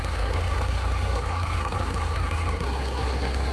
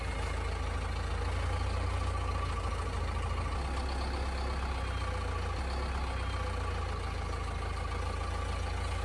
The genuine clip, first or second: second